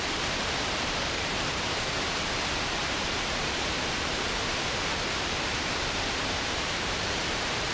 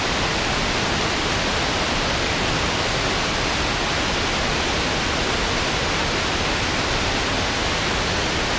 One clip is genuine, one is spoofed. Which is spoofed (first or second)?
first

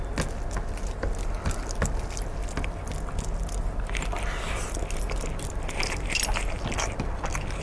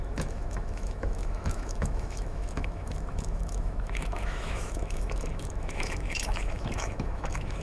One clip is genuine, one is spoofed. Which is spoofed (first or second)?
second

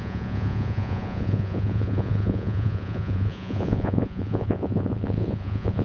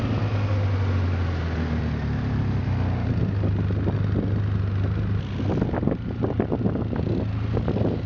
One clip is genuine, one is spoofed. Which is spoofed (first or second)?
first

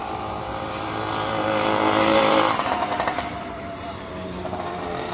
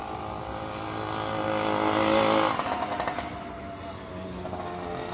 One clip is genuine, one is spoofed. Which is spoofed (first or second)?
first